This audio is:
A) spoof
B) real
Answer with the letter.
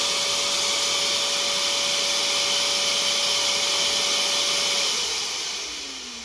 B